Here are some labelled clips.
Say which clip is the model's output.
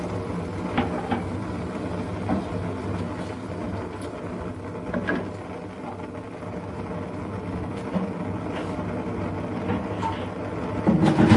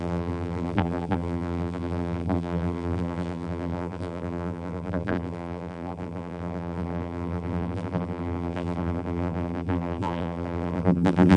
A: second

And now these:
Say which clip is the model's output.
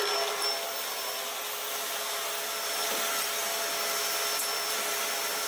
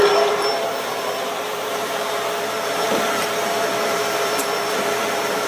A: second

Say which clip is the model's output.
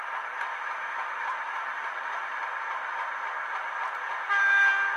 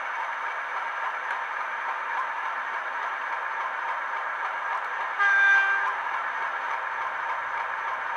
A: second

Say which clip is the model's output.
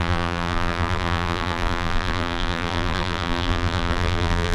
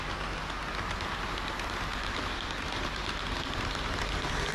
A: first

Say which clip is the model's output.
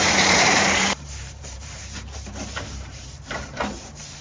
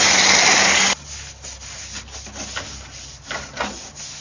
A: first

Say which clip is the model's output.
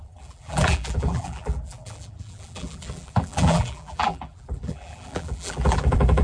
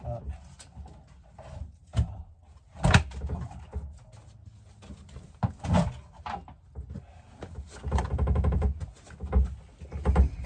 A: first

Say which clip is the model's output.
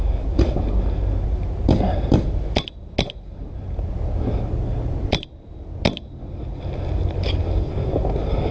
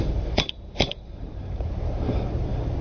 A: second